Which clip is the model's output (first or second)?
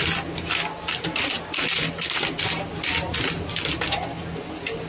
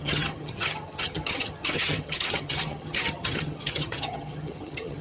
second